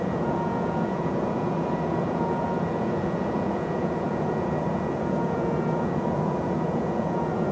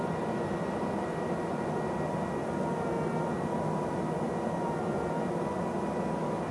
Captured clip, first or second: second